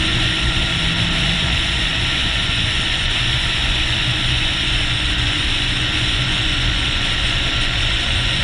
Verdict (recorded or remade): remade